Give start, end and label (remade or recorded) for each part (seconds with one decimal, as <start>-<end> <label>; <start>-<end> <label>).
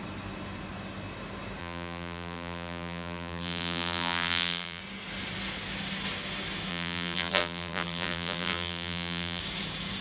0.0-1.6 recorded; 1.6-4.8 remade; 4.8-6.7 recorded; 6.7-9.4 remade; 9.4-10.0 recorded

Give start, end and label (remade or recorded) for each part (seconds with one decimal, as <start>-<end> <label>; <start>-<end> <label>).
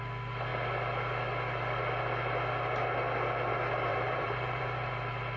0.0-3.9 recorded; 3.9-4.9 remade; 4.9-5.4 recorded